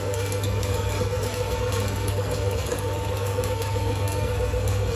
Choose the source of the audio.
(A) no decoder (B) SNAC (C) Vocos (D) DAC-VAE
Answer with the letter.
B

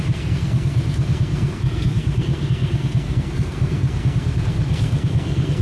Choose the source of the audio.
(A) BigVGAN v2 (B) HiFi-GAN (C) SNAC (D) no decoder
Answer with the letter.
C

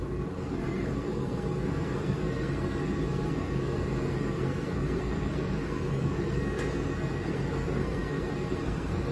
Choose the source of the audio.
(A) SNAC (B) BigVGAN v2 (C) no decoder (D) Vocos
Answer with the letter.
A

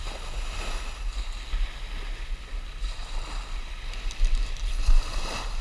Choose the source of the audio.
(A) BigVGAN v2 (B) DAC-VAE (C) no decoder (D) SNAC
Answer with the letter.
C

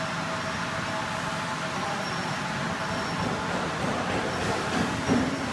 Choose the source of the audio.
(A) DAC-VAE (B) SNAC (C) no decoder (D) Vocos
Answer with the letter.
C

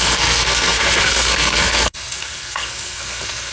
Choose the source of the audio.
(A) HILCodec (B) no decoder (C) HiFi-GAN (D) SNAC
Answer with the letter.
D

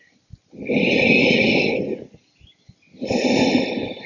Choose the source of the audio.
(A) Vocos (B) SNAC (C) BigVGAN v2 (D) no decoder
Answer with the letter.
D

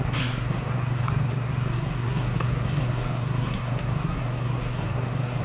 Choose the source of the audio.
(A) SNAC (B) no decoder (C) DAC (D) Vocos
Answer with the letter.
A